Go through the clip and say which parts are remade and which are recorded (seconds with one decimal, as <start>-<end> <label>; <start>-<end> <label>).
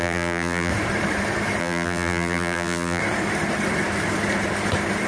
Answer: 0.0-0.7 remade; 0.7-1.6 recorded; 1.6-3.0 remade; 3.0-5.1 recorded